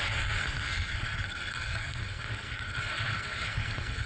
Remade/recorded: remade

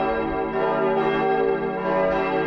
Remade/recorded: recorded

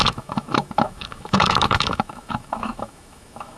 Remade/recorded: remade